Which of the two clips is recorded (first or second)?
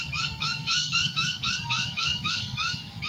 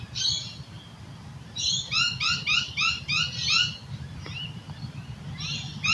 second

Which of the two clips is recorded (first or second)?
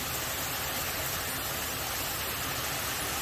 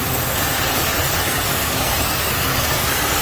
first